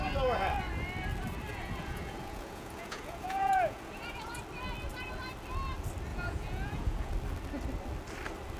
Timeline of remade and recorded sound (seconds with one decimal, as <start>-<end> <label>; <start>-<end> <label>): 0.0-1.5 recorded; 1.5-4.4 remade; 4.4-6.1 recorded; 6.1-7.1 remade; 7.1-8.6 recorded